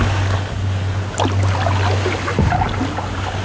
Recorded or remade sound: recorded